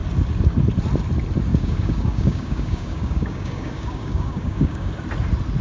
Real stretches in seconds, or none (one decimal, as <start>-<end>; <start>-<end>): 0.0-1.5; 4.9-5.6